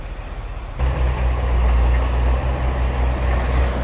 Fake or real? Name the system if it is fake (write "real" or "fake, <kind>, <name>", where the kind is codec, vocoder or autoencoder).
real